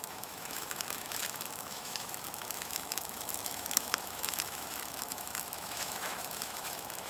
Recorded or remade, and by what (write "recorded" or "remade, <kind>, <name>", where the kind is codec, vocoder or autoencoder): remade, autoencoder, DAC-VAE